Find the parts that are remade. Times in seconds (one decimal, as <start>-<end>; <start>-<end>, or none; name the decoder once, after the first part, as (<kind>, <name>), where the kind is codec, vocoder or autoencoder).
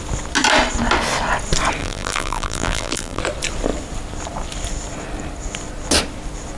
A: 1.8-3.2 (vocoder, BigVGAN v2)